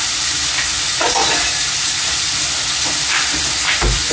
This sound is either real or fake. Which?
real